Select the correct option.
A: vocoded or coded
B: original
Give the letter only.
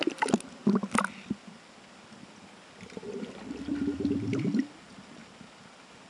B